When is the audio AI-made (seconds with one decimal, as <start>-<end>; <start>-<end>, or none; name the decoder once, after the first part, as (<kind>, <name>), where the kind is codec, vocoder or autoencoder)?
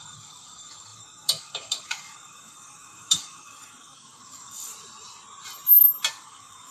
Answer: 0.0-4.7 (codec, DAC); 6.1-6.7